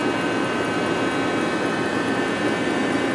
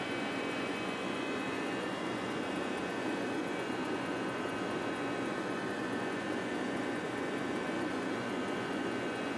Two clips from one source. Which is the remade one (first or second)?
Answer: second